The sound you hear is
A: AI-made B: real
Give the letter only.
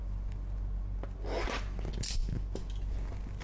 B